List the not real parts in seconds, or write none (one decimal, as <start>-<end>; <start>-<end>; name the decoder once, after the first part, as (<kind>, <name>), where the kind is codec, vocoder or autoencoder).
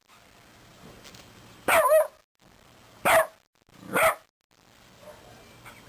none